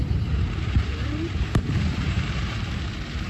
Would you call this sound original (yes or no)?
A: no